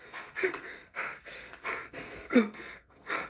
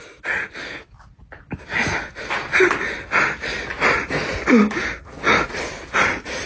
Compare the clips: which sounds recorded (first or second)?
second